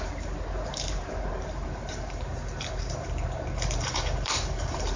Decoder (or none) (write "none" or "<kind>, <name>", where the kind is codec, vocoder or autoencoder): vocoder, BigVGAN v2